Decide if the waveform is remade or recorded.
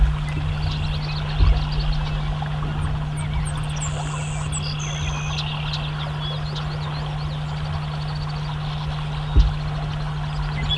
recorded